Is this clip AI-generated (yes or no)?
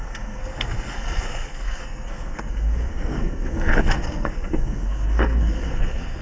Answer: yes